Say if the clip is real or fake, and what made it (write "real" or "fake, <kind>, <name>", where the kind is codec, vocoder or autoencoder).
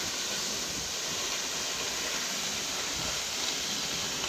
real